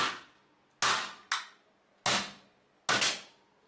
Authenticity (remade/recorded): recorded